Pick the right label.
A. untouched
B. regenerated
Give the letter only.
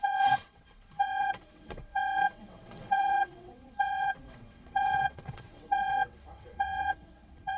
B